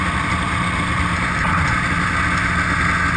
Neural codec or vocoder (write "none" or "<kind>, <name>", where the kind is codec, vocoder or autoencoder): none